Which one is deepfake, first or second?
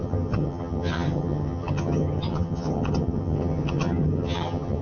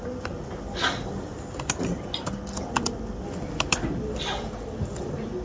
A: first